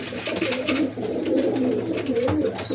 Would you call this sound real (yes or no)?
no